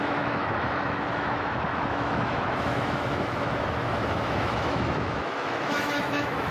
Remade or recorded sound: remade